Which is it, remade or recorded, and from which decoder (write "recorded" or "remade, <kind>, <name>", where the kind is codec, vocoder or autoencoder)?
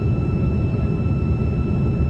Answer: recorded